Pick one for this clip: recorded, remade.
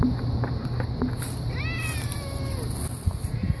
recorded